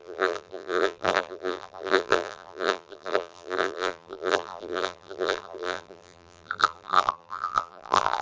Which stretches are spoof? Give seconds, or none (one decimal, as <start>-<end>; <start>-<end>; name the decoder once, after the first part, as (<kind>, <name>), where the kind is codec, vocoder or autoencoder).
0.0-8.2 (vocoder, BigVGAN v2)